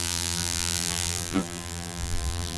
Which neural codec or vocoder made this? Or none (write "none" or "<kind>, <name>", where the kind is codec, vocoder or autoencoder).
vocoder, BigVGAN v2